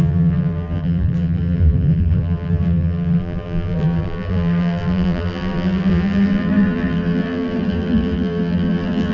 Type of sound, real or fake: fake